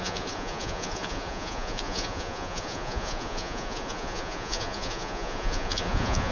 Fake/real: fake